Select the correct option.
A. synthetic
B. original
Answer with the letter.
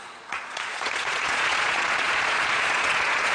A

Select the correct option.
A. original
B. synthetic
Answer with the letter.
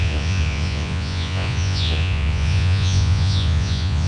B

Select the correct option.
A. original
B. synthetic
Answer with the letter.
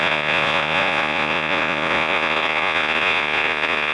B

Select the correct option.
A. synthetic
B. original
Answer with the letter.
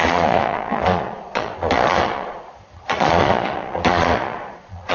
A